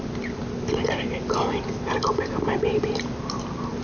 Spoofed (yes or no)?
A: no